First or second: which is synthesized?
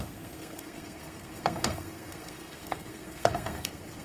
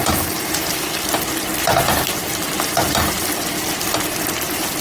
first